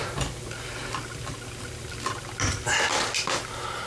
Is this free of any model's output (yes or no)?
yes